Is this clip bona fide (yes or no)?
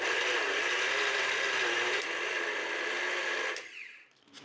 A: no